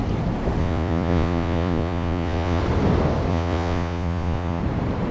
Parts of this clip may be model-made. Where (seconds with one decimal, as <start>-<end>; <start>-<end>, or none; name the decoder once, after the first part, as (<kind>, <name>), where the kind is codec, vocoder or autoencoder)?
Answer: 0.6-2.6 (vocoder, Vocos); 3.3-4.6